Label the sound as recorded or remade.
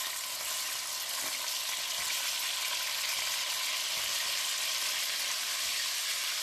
recorded